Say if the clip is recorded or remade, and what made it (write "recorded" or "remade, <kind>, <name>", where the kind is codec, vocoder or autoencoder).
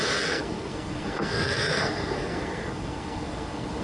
remade, codec, SNAC